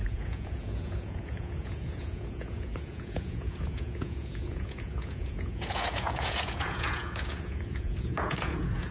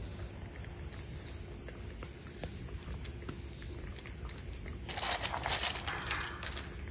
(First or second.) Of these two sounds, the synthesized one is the first